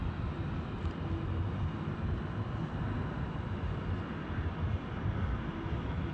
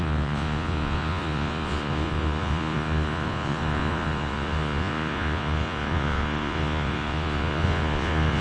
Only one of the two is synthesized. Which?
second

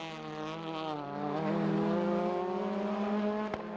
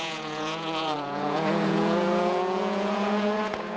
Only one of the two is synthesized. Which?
second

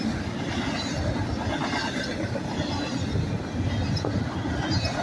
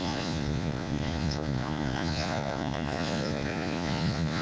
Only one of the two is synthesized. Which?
second